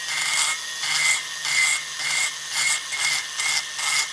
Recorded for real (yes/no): yes